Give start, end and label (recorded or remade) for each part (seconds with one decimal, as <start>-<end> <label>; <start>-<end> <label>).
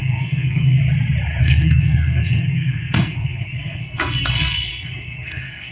0.0-0.8 remade; 0.8-1.4 recorded; 1.4-5.7 remade